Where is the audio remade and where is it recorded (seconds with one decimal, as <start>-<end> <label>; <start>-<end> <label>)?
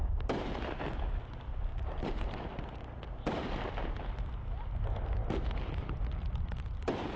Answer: 0.0-1.7 recorded; 1.7-2.5 remade; 2.5-7.2 recorded